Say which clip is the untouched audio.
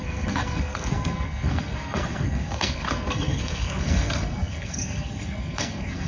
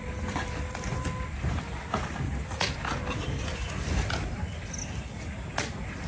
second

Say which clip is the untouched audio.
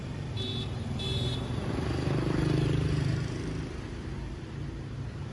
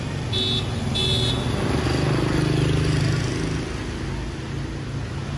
second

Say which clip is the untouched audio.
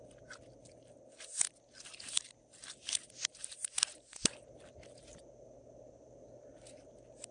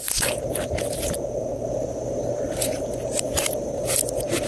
first